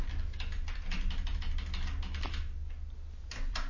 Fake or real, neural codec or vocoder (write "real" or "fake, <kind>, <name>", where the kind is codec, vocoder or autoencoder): real